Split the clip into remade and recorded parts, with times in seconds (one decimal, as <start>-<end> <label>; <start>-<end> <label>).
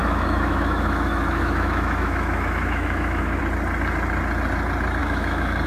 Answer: 0.0-3.4 remade; 3.4-5.0 recorded; 5.0-5.7 remade